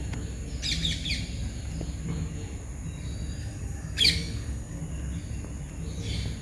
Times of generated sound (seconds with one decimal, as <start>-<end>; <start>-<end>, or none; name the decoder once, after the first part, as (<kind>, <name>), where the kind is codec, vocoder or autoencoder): 3.4-4.8 (codec, DAC)